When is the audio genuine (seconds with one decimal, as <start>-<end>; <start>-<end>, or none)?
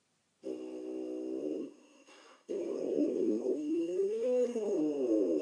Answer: 0.0-1.6; 4.8-5.4